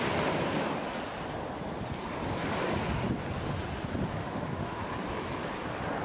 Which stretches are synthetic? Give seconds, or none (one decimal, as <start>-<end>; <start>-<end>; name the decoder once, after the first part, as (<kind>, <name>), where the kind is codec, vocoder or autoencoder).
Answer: 4.2-4.8 (autoencoder, DAC-VAE)